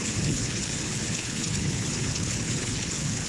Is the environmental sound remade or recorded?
remade